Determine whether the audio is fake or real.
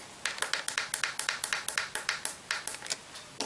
real